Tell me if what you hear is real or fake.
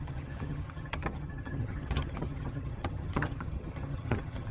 fake